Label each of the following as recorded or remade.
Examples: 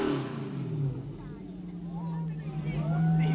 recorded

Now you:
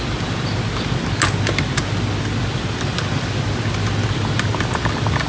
recorded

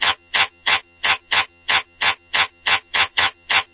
remade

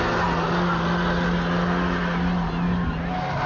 recorded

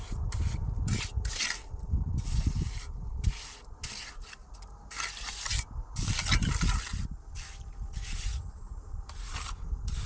recorded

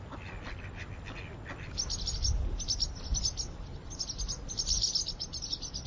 recorded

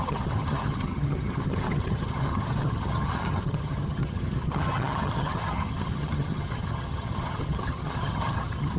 remade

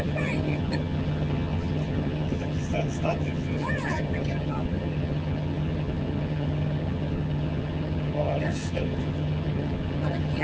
remade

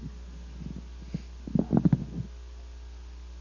recorded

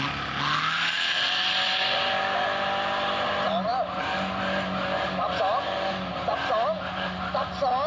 recorded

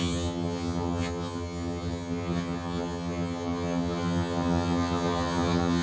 remade